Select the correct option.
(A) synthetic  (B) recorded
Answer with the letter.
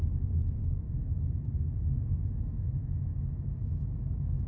A